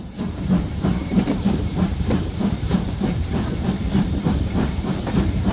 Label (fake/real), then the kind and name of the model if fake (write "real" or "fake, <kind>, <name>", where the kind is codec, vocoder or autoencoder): fake, vocoder, BigVGAN v2